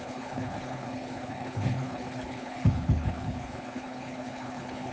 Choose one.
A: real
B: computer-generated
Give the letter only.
B